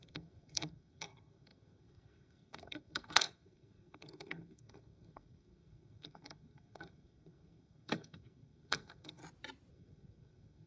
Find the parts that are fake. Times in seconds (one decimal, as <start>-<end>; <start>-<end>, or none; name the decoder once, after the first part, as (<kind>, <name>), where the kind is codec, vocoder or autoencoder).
0.0-9.2 (codec, SNAC); 9.7-10.7